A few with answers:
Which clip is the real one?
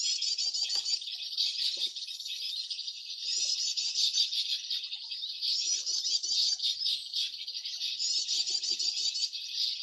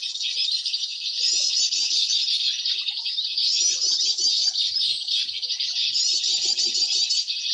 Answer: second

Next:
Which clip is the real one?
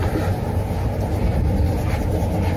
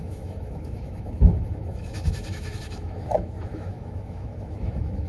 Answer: first